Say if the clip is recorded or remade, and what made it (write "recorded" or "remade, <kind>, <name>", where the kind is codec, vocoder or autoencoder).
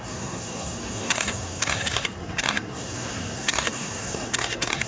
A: remade, codec, SNAC